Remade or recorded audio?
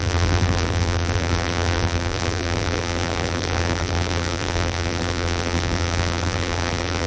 remade